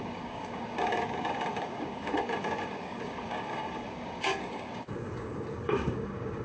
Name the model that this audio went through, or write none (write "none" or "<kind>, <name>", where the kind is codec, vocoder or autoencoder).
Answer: codec, DAC